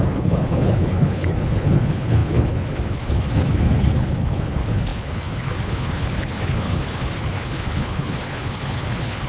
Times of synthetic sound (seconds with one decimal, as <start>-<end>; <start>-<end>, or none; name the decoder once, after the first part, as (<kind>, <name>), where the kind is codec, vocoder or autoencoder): 0.0-9.3 (codec, HILCodec)